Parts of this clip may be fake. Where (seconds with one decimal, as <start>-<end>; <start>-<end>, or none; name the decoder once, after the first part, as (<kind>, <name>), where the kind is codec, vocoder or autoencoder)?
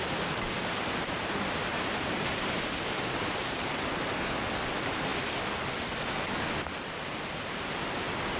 none